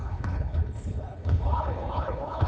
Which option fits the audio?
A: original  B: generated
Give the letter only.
B